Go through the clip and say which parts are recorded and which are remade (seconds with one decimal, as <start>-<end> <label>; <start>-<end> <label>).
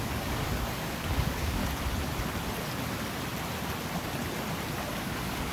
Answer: 0.0-1.6 remade; 1.6-4.9 recorded; 4.9-5.5 remade